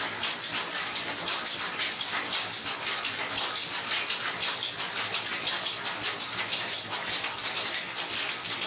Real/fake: real